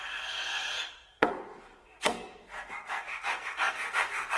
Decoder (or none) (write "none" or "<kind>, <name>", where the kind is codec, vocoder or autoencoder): codec, SNAC